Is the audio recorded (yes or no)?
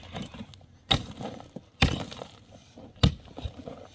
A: yes